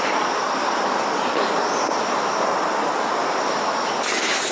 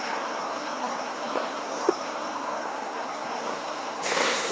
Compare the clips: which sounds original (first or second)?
first